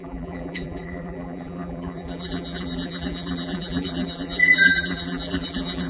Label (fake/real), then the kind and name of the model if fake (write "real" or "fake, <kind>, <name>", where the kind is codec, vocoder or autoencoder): fake, vocoder, BigVGAN v2